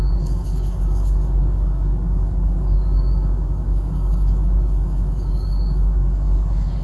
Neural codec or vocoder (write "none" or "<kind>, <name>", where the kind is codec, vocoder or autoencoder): codec, DAC